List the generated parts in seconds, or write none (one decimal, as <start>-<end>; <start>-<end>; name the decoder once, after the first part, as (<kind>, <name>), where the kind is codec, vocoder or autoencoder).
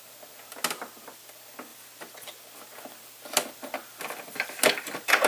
none